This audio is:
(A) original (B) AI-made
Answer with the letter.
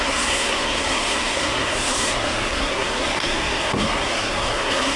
B